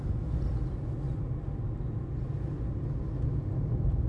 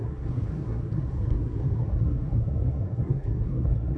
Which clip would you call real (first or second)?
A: first